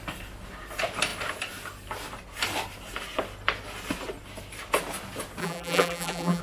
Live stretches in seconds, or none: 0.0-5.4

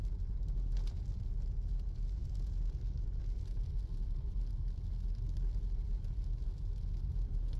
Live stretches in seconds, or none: 0.0-7.6

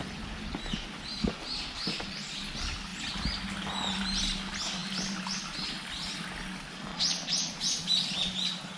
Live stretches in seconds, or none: 0.0-6.9; 7.9-8.8

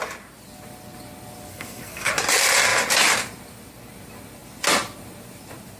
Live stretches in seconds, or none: 0.0-1.5; 2.1-5.8

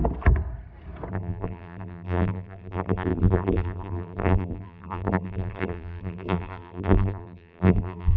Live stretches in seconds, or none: 0.0-1.1

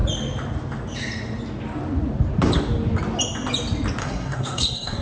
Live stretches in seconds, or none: 0.0-4.0